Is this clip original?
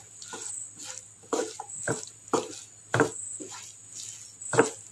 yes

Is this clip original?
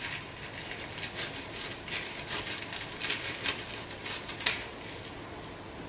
yes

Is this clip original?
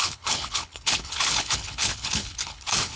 no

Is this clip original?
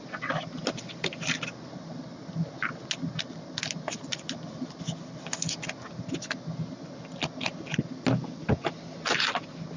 yes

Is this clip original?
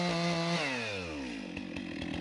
yes